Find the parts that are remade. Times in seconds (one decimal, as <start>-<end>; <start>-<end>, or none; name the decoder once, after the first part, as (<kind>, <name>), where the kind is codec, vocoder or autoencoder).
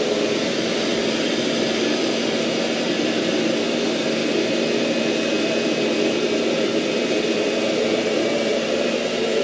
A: 0.0-9.4 (vocoder, BigVGAN v2)